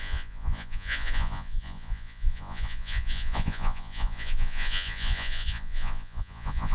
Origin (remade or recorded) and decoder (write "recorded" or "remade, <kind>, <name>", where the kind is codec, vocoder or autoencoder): remade, vocoder, Vocos